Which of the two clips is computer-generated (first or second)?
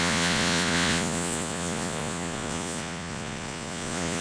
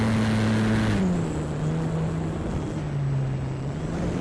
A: first